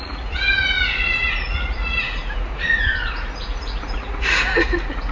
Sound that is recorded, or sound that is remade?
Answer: remade